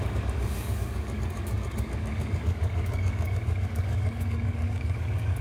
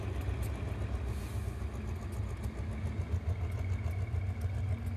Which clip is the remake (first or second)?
first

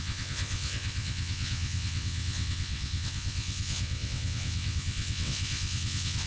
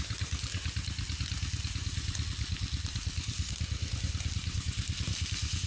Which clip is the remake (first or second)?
first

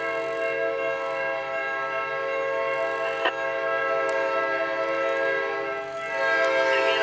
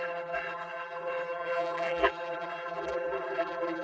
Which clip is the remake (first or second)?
second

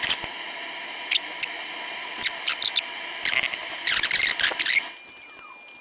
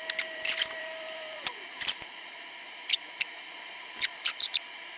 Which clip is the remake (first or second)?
second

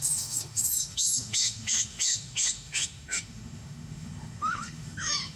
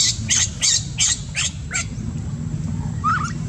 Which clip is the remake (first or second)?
first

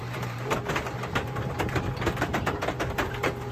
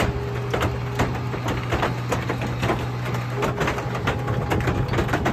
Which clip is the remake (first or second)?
first